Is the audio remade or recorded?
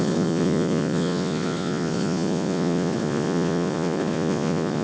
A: remade